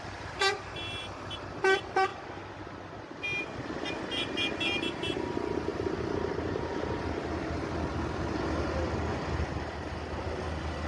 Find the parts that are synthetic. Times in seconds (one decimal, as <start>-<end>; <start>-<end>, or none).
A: none